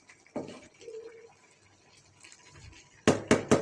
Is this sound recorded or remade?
recorded